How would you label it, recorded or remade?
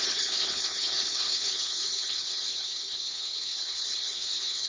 remade